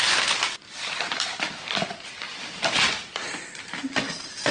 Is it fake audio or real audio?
real